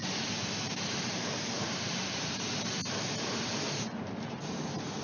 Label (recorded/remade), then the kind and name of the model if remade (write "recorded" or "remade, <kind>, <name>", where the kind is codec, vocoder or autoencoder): remade, vocoder, BigVGAN v2